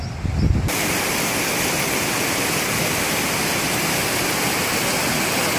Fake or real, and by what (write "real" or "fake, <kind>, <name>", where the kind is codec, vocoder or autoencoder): real